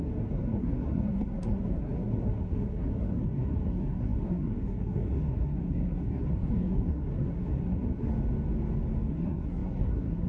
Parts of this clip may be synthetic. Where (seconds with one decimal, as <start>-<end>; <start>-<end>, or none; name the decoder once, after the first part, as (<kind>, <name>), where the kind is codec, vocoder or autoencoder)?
0.0-8.1 (codec, SNAC); 9.1-10.3